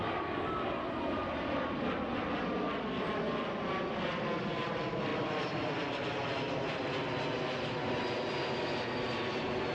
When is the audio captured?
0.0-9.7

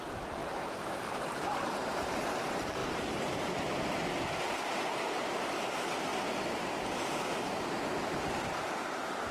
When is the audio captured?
6.1-8.4

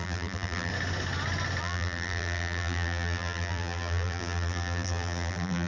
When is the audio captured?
0.7-1.6

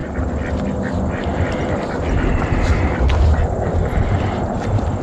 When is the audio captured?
0.0-5.0

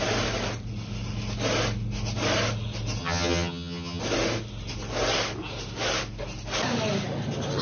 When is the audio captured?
0.0-3.0; 4.0-7.6

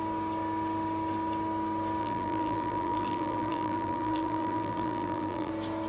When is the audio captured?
0.0-2.0; 5.5-5.9